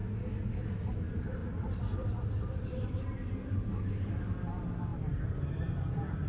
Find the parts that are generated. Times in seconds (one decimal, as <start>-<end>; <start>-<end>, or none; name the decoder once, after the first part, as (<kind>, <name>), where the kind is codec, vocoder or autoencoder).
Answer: 1.4-2.9 (vocoder, BigVGAN v2); 4.9-6.3